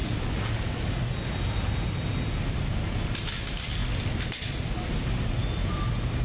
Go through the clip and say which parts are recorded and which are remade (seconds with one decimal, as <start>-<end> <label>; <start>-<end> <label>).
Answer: 0.0-6.2 recorded